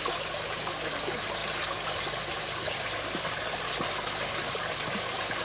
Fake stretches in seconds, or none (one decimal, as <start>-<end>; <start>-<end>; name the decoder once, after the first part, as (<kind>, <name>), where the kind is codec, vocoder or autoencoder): none